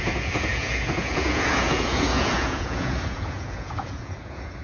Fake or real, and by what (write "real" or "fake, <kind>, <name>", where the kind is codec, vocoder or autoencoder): fake, vocoder, Vocos